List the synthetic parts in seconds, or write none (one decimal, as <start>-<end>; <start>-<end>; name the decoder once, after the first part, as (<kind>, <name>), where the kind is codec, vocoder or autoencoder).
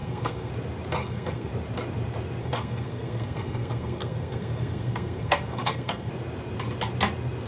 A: 0.0-0.5 (codec, SNAC); 1.0-1.5; 2.4-6.1